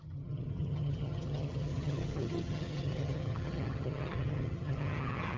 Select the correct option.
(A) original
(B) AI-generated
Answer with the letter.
B